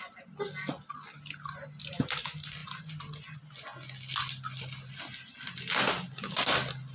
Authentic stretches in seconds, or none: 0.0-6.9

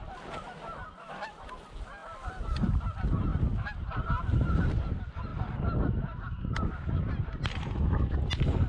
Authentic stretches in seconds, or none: 0.0-8.7